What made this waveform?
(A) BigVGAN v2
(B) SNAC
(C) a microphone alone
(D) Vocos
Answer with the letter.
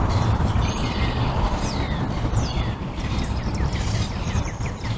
A